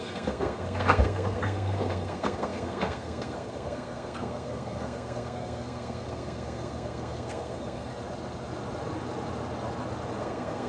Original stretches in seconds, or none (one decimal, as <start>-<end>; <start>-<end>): 7.9-10.2

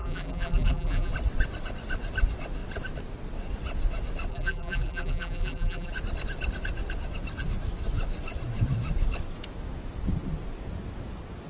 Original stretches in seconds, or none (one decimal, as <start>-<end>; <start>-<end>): 1.1-4.3; 5.9-11.5

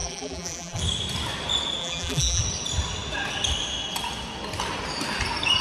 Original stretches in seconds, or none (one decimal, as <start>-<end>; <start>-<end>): 0.8-1.8; 2.4-5.6

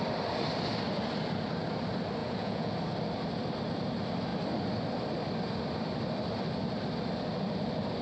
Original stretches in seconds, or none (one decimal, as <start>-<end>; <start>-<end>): 0.0-2.2; 2.7-8.0